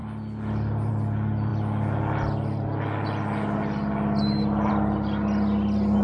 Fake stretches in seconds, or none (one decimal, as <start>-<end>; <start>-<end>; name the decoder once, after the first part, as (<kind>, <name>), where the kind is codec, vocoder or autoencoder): none